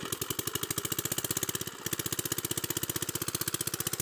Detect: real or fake real